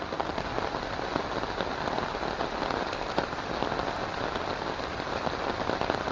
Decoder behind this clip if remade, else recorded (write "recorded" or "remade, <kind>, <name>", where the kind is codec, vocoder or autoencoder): recorded